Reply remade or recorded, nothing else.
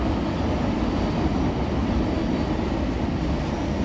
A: recorded